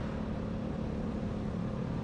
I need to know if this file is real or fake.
real